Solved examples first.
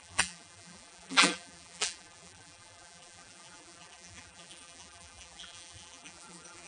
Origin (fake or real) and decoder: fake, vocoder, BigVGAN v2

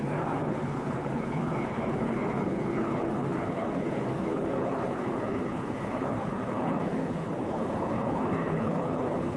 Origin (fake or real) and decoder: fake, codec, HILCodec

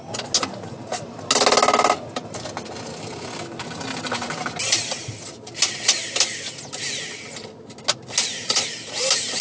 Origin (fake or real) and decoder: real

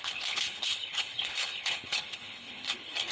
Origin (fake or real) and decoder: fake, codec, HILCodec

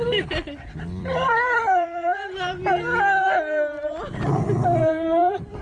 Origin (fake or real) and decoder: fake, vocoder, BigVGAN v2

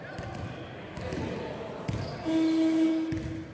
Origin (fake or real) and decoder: real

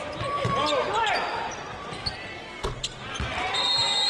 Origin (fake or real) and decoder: real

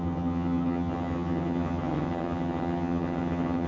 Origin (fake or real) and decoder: fake, vocoder, HiFi-GAN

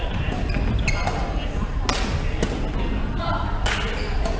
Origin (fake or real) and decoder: real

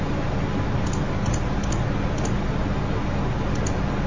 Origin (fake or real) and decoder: real